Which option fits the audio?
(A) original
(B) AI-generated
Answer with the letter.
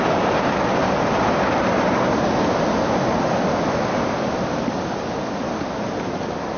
A